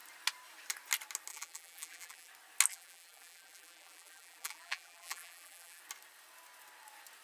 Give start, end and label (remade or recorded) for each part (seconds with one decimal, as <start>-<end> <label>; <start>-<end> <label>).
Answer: 0.0-1.3 recorded; 1.3-2.3 remade; 2.3-2.7 recorded; 2.7-5.8 remade; 5.8-7.2 recorded

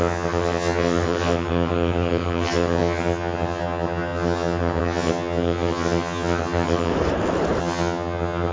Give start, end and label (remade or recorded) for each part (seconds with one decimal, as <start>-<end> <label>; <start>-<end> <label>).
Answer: 0.0-6.9 remade; 6.9-7.6 recorded; 7.6-8.5 remade

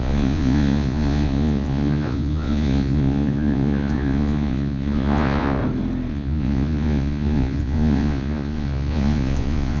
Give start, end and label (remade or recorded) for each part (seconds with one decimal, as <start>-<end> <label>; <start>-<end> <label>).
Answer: 0.0-5.6 remade; 5.6-6.1 recorded; 6.1-9.8 remade

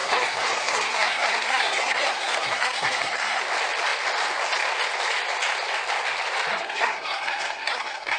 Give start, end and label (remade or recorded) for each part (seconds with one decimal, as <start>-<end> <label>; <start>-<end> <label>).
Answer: 0.0-3.4 remade; 3.4-6.5 recorded; 6.5-8.2 remade

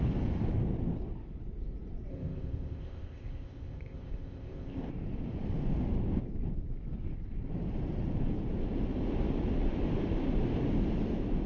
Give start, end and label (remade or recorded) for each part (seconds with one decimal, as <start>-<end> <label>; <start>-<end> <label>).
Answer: 0.0-2.1 recorded; 2.1-4.9 remade; 4.9-11.5 recorded

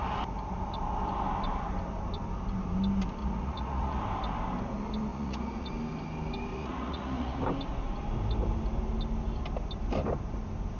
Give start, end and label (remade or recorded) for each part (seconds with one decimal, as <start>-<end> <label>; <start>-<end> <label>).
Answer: 0.0-3.2 recorded; 3.2-4.0 remade; 4.0-5.1 recorded; 5.1-5.7 remade; 5.7-6.5 recorded; 6.5-7.4 remade; 7.4-10.8 recorded

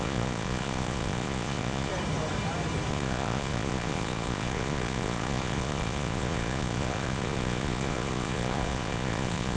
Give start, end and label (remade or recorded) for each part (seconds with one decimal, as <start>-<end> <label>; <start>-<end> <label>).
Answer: 0.0-1.9 remade; 1.9-2.9 recorded; 2.9-9.6 remade